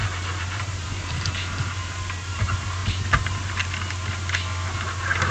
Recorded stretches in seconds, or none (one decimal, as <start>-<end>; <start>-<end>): 2.4-2.8; 3.5-5.3